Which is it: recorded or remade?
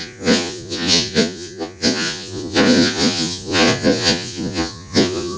remade